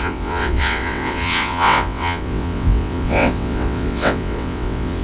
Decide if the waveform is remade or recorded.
remade